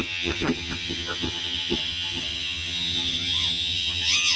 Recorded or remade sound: remade